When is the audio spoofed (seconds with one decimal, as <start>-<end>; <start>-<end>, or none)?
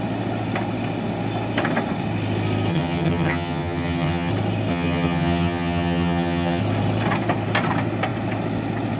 2.7-4.3; 4.7-6.6